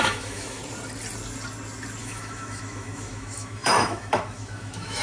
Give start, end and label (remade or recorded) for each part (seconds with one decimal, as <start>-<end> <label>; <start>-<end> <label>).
0.0-0.6 remade; 0.6-2.0 recorded; 2.0-5.0 remade